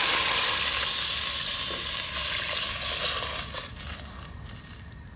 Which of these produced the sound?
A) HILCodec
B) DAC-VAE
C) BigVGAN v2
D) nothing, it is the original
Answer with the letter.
D